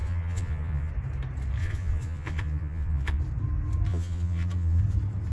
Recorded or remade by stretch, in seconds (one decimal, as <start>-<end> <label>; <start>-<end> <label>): 0.0-0.9 remade; 0.9-1.6 recorded; 1.6-3.2 remade; 3.2-3.9 recorded; 3.9-4.8 remade; 4.8-5.3 recorded